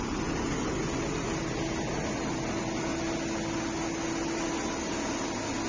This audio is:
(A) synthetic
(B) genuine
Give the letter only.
B